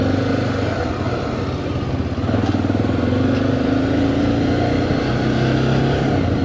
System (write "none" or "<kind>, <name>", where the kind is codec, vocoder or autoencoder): none